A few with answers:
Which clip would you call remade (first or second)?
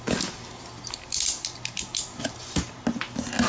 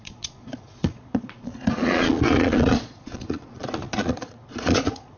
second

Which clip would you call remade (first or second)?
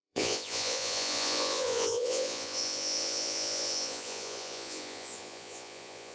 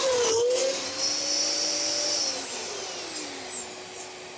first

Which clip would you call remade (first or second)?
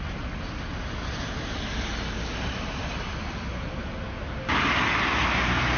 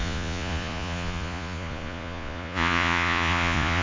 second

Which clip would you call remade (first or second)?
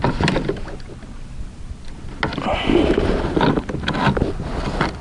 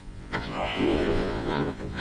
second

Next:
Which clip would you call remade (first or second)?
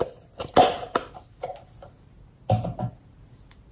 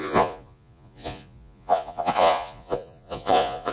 second